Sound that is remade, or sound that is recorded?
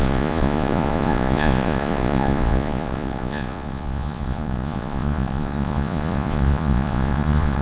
remade